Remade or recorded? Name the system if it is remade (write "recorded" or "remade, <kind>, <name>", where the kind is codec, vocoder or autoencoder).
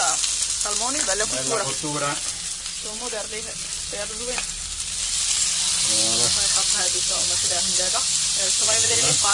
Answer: recorded